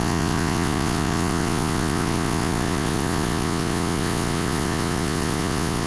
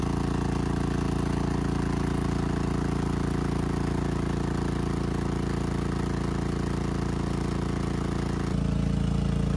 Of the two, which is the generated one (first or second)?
first